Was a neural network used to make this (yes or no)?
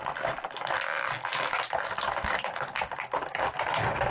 no